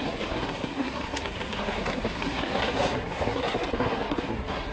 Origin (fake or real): fake